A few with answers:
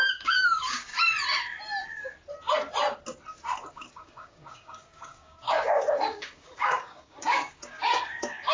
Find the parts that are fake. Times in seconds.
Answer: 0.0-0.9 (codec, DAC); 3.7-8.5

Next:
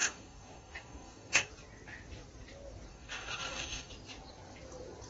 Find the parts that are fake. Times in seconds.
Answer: 0.0-1.5 (codec, DAC); 2.9-3.9